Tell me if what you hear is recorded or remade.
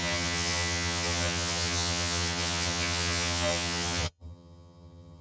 remade